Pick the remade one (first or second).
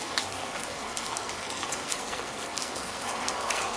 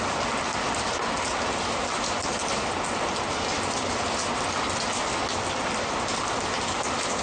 first